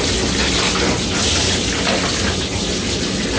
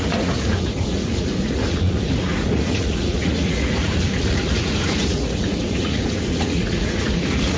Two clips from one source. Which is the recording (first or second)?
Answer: first